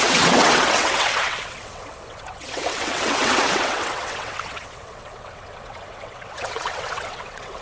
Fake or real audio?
fake